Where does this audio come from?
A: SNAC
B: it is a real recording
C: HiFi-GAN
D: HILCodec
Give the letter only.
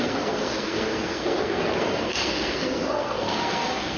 A